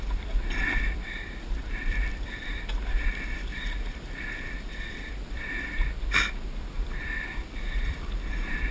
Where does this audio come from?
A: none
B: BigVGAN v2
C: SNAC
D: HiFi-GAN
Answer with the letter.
B